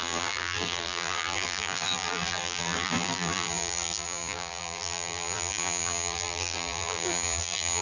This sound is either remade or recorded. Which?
remade